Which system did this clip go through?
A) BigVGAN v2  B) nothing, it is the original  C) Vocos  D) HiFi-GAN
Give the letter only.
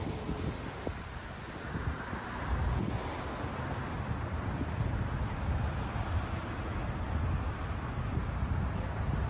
B